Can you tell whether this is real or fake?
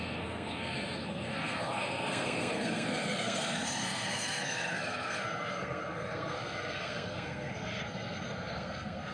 fake